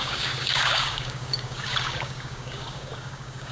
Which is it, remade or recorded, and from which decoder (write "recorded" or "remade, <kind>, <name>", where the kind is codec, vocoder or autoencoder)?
remade, codec, DAC